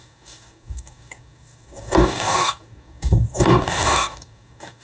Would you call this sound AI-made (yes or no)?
yes